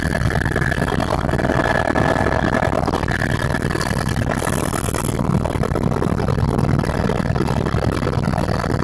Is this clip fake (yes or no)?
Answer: no